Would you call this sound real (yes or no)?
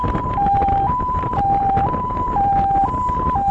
no